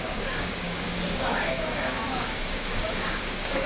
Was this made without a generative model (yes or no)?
no